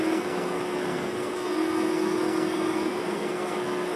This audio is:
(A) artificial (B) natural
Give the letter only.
A